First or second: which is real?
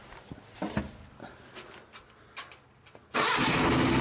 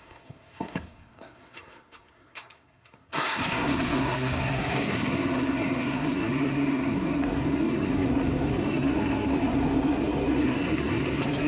first